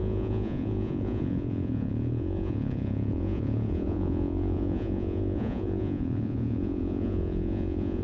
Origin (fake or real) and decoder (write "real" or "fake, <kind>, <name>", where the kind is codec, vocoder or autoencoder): fake, vocoder, Vocos